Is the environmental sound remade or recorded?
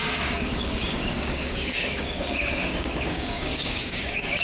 remade